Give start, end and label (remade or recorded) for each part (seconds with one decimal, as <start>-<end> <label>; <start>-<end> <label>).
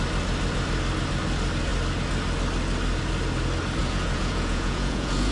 0.0-3.8 recorded; 3.8-5.3 remade